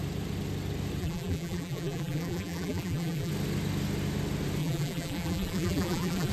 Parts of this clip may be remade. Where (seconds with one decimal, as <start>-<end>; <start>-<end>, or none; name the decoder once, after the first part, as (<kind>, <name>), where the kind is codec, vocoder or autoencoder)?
1.0-3.3 (vocoder, BigVGAN v2); 4.6-6.3